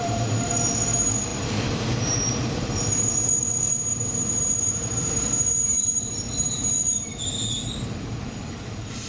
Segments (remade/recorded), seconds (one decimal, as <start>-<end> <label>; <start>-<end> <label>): 0.0-6.8 remade; 6.8-8.2 recorded; 8.2-9.1 remade